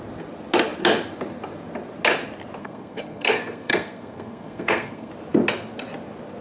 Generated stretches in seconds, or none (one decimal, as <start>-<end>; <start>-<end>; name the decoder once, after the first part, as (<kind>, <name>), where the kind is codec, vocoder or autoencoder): 2.6-5.1 (codec, SNAC)